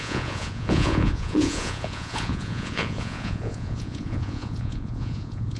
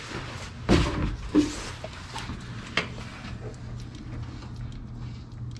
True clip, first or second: second